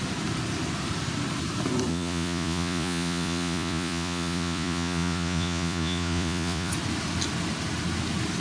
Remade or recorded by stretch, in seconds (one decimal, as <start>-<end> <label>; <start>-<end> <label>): 0.0-1.9 recorded; 1.9-6.7 remade; 6.7-8.4 recorded